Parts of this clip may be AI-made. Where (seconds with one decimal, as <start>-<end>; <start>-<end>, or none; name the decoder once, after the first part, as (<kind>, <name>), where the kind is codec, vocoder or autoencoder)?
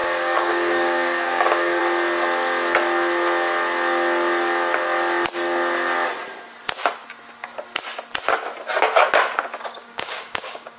0.0-1.8 (codec, DAC); 9.8-10.8